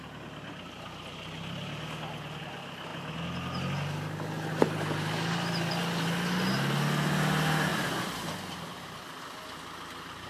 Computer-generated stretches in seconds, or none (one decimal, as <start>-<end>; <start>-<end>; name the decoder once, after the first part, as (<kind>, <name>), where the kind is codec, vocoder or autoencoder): 7.7-9.2 (vocoder, BigVGAN v2)